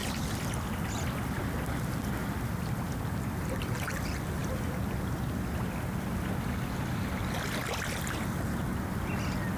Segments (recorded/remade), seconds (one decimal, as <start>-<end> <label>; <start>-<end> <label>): 0.0-9.6 recorded